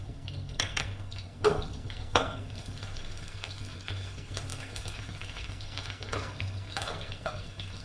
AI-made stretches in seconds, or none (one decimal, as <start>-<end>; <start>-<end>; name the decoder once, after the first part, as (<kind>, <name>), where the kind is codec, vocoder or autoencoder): 0.0-7.8 (codec, SNAC)